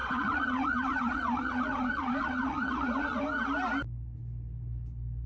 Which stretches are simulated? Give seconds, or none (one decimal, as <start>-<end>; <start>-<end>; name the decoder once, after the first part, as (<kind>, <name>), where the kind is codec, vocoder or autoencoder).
0.0-3.2 (vocoder, Vocos)